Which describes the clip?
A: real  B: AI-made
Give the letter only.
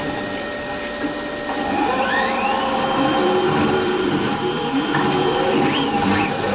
B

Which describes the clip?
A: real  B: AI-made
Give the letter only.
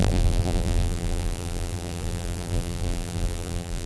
B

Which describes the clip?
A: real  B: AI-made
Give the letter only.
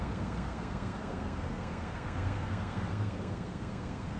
B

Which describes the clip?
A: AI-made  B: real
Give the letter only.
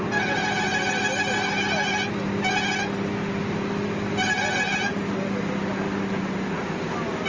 B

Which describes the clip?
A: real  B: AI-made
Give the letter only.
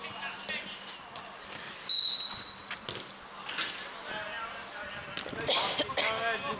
A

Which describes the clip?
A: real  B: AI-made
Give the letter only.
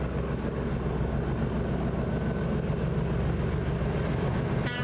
A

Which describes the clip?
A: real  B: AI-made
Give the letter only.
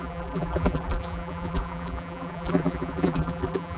B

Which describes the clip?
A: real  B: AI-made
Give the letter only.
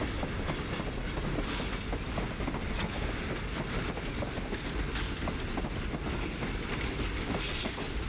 A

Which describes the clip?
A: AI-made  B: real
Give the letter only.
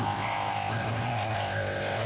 A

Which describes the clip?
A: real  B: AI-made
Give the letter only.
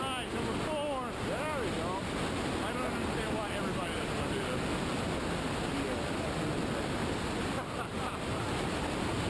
A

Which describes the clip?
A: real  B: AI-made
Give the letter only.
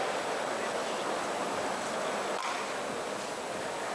A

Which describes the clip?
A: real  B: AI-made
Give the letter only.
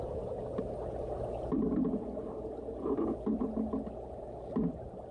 A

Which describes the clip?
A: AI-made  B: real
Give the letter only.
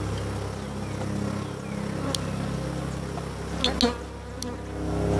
B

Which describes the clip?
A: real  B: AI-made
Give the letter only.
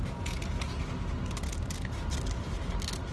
A